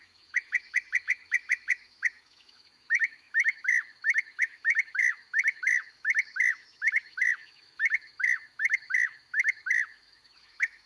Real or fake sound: fake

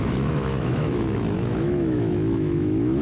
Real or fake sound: fake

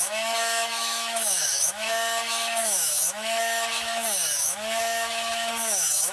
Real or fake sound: fake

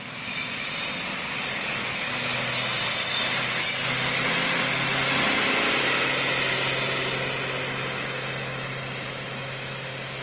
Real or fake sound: real